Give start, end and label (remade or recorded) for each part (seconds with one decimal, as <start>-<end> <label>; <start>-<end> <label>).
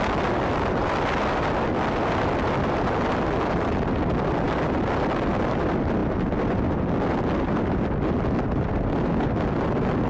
0.0-10.1 recorded